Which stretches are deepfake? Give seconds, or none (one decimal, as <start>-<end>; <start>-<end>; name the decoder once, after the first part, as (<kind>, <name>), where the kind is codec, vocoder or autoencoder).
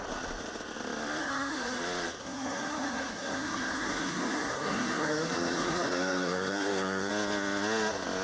1.2-1.8 (codec, SNAC); 2.2-7.1